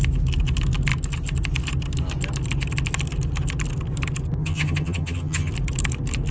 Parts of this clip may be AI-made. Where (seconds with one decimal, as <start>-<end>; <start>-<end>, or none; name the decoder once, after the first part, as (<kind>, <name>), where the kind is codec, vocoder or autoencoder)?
4.4-5.5 (vocoder, HiFi-GAN)